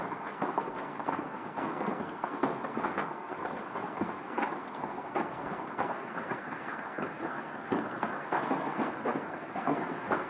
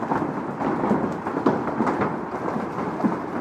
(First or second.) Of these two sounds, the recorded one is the second